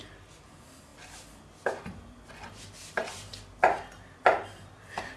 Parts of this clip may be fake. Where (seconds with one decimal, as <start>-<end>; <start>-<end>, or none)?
none